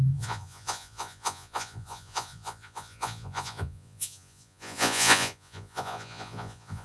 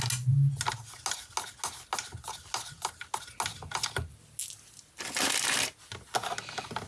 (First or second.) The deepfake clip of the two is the first